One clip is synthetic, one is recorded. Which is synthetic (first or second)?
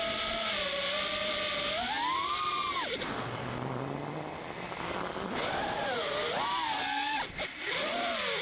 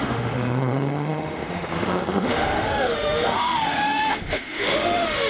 second